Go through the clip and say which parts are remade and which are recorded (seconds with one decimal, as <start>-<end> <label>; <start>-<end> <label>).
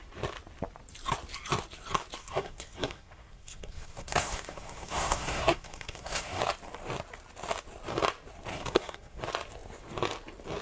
0.0-2.2 recorded; 2.2-6.4 remade; 6.4-8.5 recorded; 8.5-9.2 remade; 9.2-10.6 recorded